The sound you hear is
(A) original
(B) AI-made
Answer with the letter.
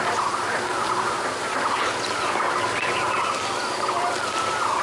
A